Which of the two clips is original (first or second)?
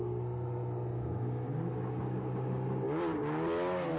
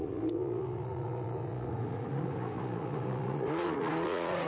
first